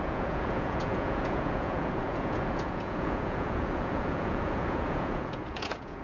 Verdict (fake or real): fake